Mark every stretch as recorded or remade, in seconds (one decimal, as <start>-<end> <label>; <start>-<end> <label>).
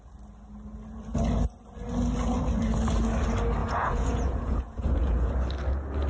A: 0.0-3.6 recorded; 3.6-5.3 remade; 5.3-6.1 recorded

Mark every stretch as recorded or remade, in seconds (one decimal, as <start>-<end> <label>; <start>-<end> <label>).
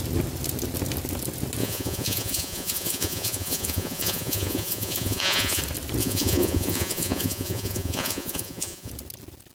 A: 0.0-1.6 recorded; 1.6-5.6 remade; 5.6-6.0 recorded; 6.0-8.9 remade; 8.9-9.5 recorded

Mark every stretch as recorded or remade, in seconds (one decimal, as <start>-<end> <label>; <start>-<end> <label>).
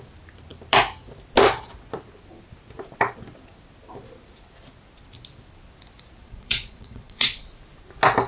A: 0.0-6.2 recorded; 6.2-7.5 remade; 7.5-8.3 recorded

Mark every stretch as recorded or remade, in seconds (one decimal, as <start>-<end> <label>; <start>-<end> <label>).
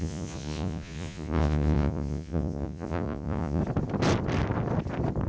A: 0.0-3.6 remade; 3.6-5.3 recorded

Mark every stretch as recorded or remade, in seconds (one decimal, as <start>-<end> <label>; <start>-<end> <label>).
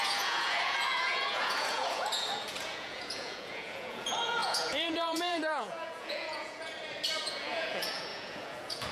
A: 0.0-6.7 remade; 6.7-7.2 recorded; 7.2-8.9 remade